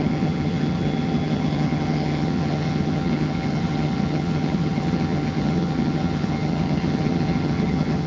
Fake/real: fake